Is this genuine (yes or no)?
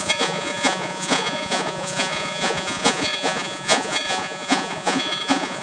no